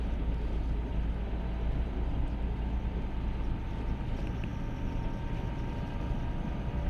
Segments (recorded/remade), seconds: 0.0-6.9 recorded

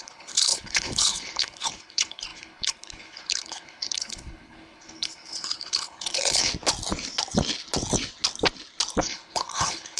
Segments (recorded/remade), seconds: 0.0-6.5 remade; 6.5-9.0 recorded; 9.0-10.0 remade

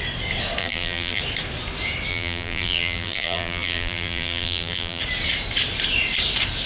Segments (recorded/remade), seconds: 0.0-0.6 recorded; 0.6-1.2 remade; 1.2-2.1 recorded; 2.1-5.0 remade; 5.0-6.7 recorded

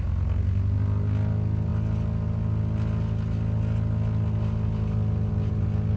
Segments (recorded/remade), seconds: 0.0-6.0 recorded

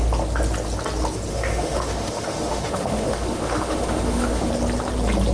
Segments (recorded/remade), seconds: 0.0-1.3 recorded; 1.3-4.5 remade; 4.5-5.3 recorded